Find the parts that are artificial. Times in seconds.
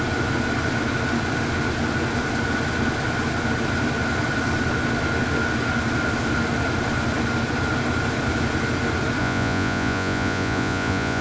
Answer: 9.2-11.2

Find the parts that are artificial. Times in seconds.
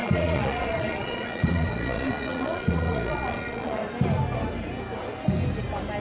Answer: 0.0-3.8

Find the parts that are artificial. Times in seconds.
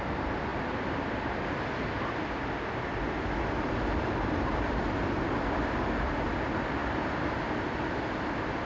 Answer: none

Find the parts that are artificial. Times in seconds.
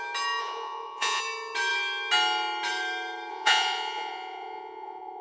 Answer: 0.4-1.2; 3.3-5.2